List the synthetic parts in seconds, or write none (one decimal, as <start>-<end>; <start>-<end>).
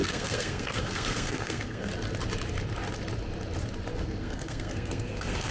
0.0-1.9; 3.9-5.5